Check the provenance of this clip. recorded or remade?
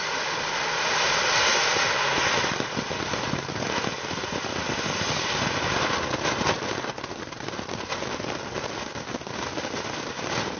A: recorded